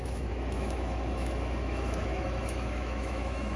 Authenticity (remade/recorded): remade